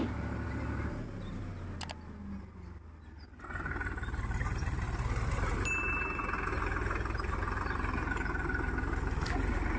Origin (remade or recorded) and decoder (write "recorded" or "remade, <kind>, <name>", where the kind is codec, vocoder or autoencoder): recorded